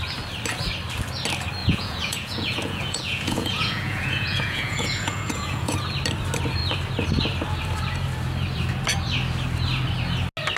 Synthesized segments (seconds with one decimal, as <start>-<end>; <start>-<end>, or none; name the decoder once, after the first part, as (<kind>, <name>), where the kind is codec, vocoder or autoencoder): 1.6-5.8 (vocoder, Vocos)